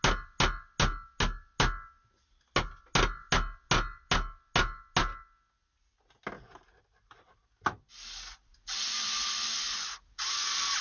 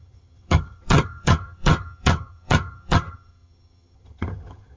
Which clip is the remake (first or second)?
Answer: second